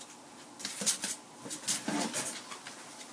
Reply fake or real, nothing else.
real